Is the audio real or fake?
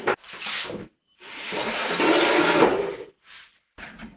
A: fake